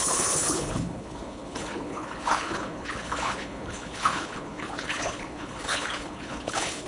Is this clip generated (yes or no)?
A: yes